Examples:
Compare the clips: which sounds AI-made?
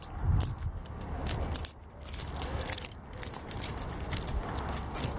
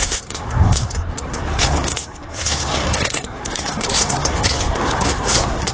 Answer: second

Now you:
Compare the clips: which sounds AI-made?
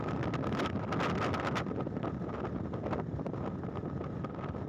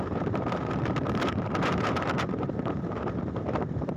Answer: second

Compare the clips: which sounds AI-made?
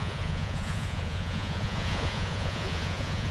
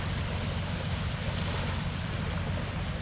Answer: first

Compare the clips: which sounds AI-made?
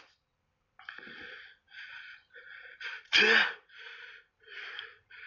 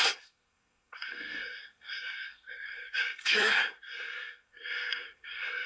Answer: second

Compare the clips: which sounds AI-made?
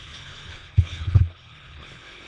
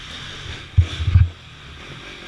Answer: first